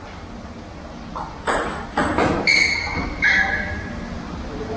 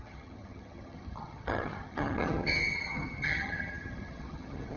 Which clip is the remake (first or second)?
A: second